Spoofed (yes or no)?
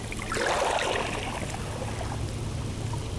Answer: no